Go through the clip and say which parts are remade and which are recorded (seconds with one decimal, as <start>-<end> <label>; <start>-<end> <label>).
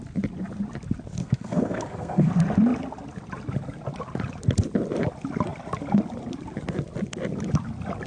0.0-1.2 recorded; 1.2-2.3 remade; 2.3-8.1 recorded